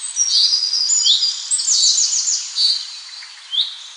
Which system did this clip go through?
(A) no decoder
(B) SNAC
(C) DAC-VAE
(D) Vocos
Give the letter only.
A